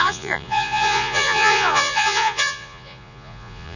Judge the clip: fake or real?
fake